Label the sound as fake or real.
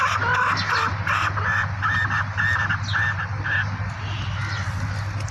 real